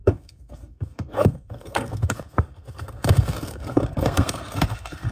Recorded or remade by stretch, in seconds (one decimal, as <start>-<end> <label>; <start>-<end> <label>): 0.0-5.1 remade